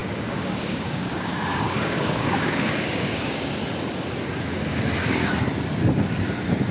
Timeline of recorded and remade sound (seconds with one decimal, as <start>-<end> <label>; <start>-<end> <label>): 0.0-3.6 remade; 3.6-4.5 recorded; 4.5-5.3 remade; 5.3-6.7 recorded